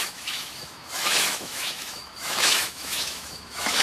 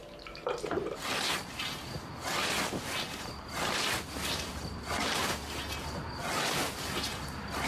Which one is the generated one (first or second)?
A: first